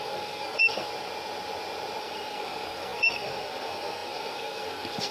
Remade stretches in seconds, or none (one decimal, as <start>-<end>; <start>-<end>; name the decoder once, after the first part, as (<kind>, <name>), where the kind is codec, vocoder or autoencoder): 0.0-0.9 (codec, SNAC); 2.0-5.1

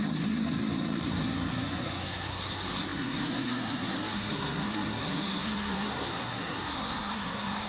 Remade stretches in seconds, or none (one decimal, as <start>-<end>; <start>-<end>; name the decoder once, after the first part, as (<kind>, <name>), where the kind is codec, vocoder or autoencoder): 0.0-7.7 (codec, SNAC)